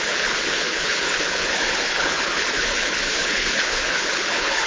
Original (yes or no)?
no